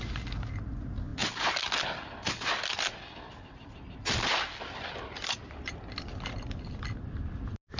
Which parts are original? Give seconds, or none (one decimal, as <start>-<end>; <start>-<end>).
0.0-7.8